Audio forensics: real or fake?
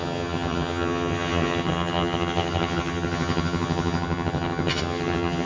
fake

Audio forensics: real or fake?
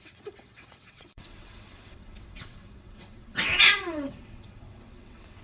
fake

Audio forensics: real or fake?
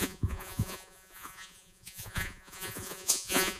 fake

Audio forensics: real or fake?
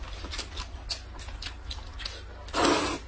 real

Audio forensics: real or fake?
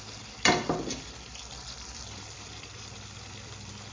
fake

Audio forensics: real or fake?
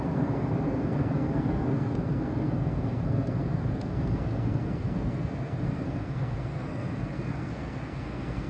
fake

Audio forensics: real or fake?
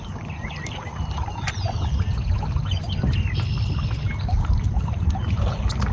real